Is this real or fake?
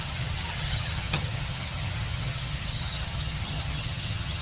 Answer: fake